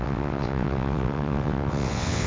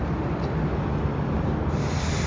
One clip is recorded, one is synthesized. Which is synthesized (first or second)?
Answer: first